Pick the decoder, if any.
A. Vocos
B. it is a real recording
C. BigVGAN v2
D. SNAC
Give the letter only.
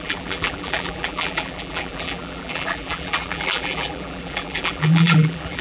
C